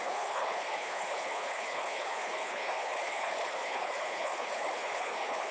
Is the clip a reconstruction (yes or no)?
yes